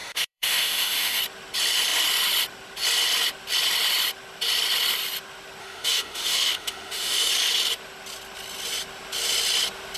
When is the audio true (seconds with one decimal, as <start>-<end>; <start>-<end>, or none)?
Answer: 1.2-5.6; 7.3-10.0